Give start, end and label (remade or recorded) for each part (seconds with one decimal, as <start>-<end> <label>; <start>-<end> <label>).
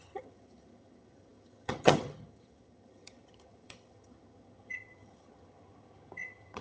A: 0.0-6.6 remade